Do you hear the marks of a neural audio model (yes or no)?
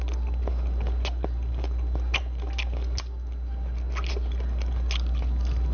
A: no